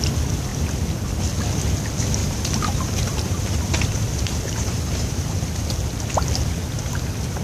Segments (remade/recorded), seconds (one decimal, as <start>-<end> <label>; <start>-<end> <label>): 0.0-2.2 recorded; 2.2-5.4 remade; 5.4-7.4 recorded